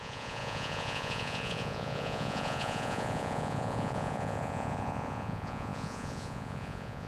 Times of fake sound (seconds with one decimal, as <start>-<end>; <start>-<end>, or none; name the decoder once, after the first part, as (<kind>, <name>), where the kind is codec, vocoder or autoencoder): 0.0-7.1 (vocoder, Vocos)